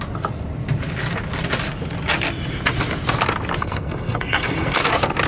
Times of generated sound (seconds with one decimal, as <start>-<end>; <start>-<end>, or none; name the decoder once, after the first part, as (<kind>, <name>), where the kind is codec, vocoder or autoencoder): 3.6-4.8 (codec, SNAC)